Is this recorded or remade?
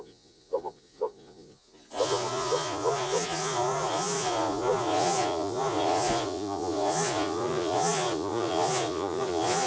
remade